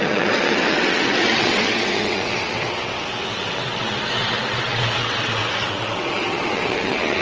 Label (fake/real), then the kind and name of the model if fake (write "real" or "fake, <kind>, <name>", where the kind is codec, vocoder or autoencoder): fake, vocoder, WaveNeXt